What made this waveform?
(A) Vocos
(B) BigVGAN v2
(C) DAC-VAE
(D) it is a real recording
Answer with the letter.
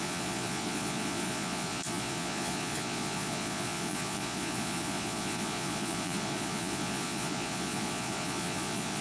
A